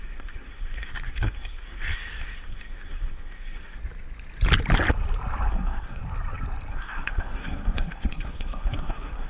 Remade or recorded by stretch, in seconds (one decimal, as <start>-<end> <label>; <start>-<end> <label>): 0.0-3.8 remade; 3.8-5.5 recorded; 5.5-6.0 remade; 6.0-6.7 recorded; 6.7-9.3 remade